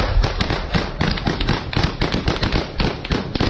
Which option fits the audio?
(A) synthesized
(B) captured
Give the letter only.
B